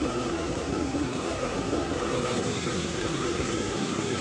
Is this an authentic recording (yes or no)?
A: no